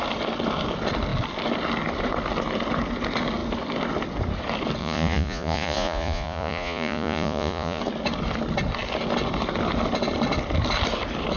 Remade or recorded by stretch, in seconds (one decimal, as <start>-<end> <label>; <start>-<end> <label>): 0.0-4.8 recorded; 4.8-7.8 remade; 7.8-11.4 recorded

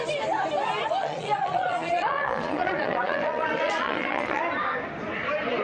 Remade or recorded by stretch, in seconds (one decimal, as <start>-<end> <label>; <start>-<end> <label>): 0.0-1.0 recorded; 1.0-4.4 remade; 4.4-5.6 recorded

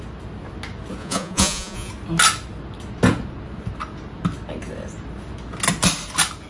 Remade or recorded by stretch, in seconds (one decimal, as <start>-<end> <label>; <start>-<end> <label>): 0.0-1.0 recorded; 1.0-1.9 remade; 1.9-6.5 recorded

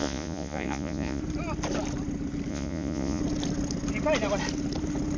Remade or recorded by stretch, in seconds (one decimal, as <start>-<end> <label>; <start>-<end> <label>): 0.0-1.2 remade; 1.2-2.5 recorded; 2.5-3.2 remade; 3.2-5.2 recorded

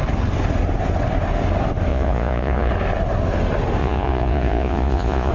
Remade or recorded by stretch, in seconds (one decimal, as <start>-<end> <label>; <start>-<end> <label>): 0.0-1.9 recorded; 1.9-2.7 remade; 2.7-3.8 recorded; 3.8-5.3 remade